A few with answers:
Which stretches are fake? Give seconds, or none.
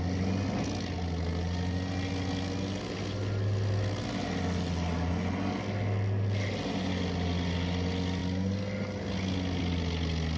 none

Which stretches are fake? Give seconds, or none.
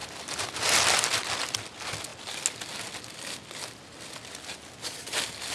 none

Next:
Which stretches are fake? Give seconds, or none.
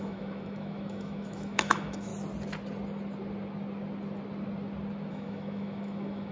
0.0-2.1 (autoencoder, DAC-VAE); 5.1-6.3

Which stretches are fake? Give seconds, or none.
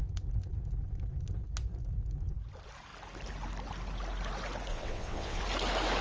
4.7-5.4 (vocoder, WaveNeXt)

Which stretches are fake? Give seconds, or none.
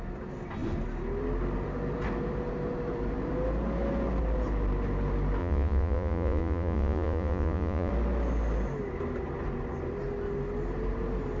5.4-7.9 (vocoder, Vocos)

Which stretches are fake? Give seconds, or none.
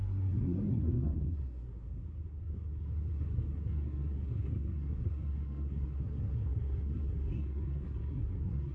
0.0-8.7 (codec, SNAC)